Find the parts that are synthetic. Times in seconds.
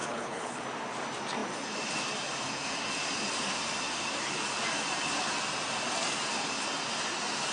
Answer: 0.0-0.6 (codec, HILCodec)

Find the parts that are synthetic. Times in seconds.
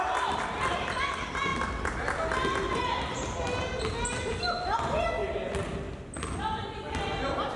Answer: none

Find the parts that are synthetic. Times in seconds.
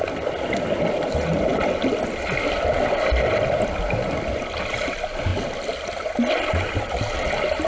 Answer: none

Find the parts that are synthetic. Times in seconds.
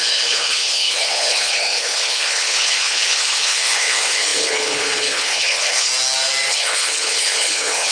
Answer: 0.0-5.9 (codec, HILCodec); 6.5-7.9